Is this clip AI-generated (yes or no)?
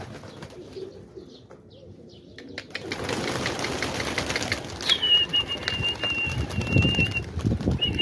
no